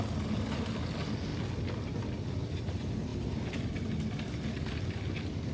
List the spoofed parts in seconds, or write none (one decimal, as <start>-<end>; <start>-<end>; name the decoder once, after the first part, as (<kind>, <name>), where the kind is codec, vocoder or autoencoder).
none